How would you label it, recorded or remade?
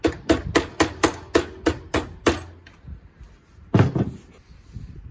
recorded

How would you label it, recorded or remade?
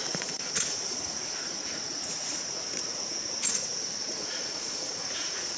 remade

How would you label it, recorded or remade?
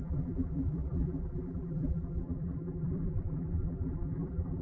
remade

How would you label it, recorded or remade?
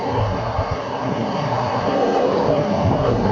remade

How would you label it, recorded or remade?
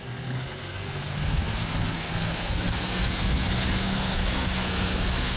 remade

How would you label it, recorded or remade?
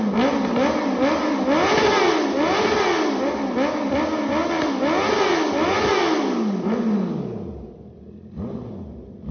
recorded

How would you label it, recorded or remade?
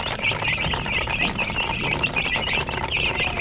remade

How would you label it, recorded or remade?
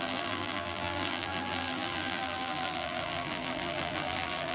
remade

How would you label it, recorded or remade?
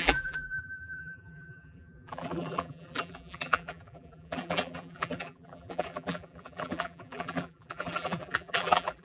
remade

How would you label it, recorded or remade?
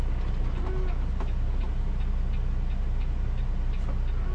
recorded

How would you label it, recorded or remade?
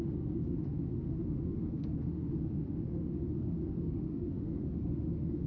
remade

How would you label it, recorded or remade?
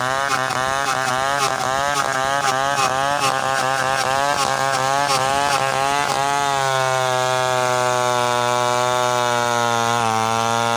recorded